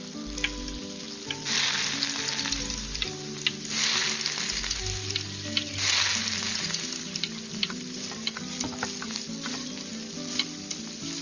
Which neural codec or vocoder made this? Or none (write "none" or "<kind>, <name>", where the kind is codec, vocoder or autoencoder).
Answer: none